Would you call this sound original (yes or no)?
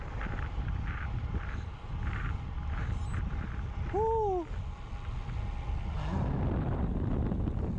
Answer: yes